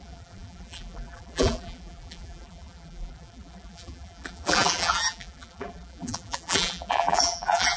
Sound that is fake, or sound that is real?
fake